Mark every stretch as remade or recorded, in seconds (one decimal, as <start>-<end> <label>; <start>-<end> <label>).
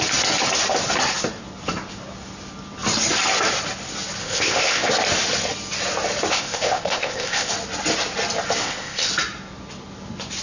0.0-4.2 recorded; 4.2-4.9 remade; 4.9-6.3 recorded; 6.3-7.5 remade; 7.5-8.6 recorded; 8.6-9.1 remade; 9.1-10.4 recorded